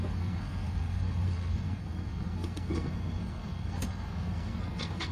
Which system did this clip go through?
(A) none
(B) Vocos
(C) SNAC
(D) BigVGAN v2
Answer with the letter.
C